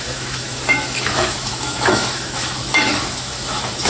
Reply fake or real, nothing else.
fake